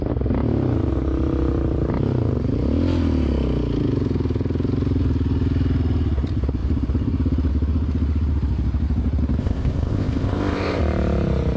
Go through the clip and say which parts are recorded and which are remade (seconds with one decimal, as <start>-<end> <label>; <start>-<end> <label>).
0.0-9.4 recorded; 9.4-10.8 remade; 10.8-11.6 recorded